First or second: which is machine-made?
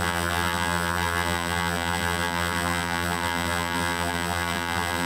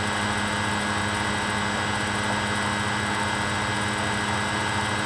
first